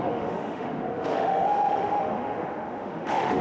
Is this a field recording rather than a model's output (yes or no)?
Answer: no